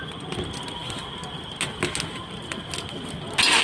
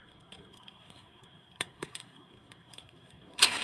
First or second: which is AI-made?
second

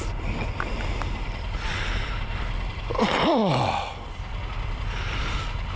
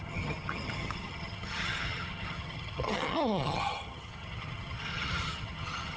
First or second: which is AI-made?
second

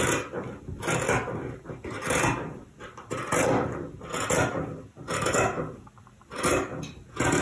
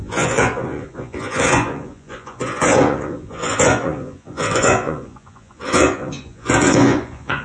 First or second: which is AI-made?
second